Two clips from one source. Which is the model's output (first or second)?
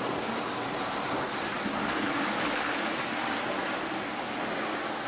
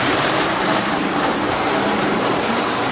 second